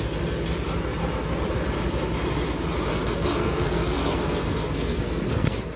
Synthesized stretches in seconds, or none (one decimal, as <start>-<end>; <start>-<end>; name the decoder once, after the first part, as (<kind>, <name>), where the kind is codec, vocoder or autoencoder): 2.9-5.8 (codec, SNAC)